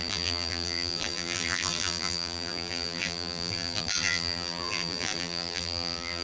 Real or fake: fake